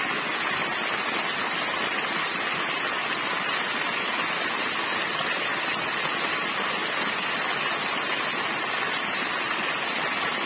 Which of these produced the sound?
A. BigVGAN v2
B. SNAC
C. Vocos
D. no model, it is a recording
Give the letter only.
D